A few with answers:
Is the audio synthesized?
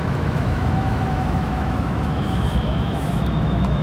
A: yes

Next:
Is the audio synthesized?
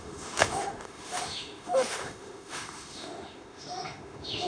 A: yes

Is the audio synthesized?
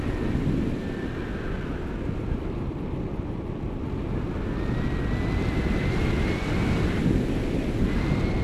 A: no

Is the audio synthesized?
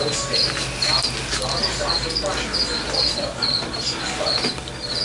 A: no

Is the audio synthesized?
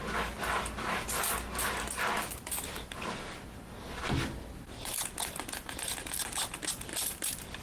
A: no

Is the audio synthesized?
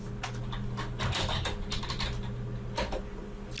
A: no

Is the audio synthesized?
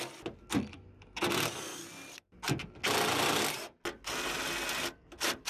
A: no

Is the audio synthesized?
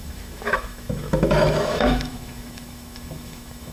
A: yes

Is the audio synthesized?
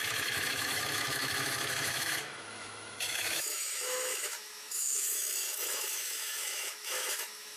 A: yes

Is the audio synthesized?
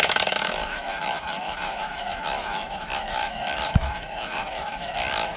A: yes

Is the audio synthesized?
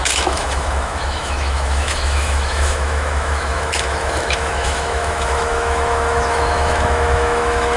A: yes